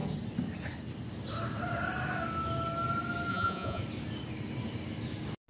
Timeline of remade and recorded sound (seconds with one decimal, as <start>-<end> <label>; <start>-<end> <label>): 0.0-3.3 recorded; 3.3-3.8 remade; 3.8-5.5 recorded